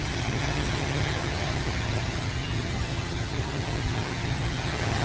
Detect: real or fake fake